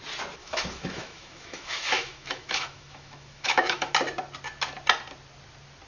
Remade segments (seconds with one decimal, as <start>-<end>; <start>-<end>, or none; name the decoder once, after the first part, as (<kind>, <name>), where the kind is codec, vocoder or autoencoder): 0.4-3.9 (autoencoder, DAC-VAE)